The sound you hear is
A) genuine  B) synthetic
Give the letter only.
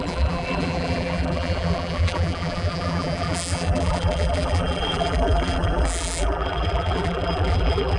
B